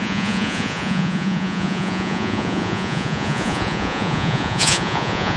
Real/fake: fake